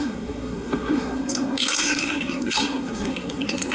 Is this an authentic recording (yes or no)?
no